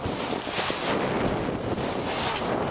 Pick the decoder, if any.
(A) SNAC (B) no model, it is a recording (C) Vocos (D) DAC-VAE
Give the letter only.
B